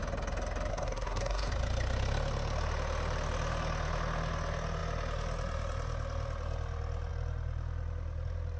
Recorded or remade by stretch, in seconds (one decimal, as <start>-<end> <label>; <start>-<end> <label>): 0.0-0.7 recorded; 0.7-1.5 remade; 1.5-8.6 recorded